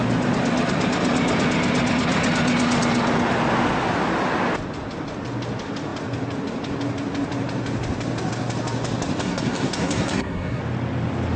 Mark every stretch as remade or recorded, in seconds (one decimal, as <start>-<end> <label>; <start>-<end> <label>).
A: 0.0-9.2 recorded; 9.2-10.6 remade; 10.6-11.4 recorded